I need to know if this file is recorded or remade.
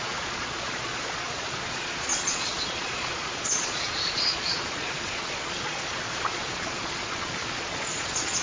remade